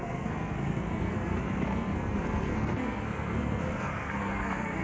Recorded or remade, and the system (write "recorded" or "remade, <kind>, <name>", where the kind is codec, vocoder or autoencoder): remade, codec, SNAC